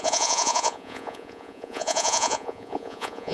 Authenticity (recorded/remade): remade